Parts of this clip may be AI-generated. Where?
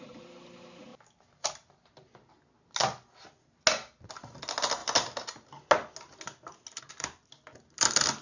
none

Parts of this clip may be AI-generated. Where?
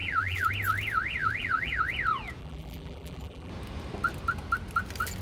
0.0-0.5 (vocoder, BigVGAN v2); 1.2-1.8; 2.4-3.5